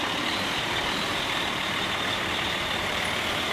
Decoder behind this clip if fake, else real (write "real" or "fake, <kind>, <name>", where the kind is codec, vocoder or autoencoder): fake, vocoder, BigVGAN v2